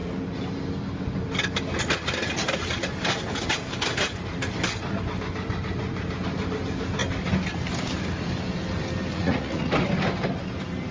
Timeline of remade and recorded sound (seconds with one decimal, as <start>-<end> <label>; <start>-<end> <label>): 0.0-9.1 recorded; 9.1-9.7 remade; 9.7-10.9 recorded